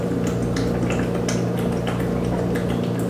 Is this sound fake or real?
real